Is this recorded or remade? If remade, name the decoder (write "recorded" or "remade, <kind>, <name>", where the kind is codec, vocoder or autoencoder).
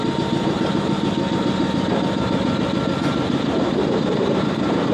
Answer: remade, vocoder, BigVGAN v2